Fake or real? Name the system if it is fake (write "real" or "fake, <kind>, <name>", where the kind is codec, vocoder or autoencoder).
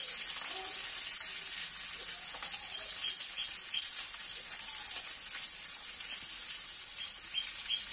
real